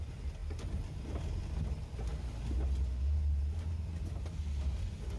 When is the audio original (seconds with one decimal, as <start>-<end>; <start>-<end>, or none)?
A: 0.0-5.2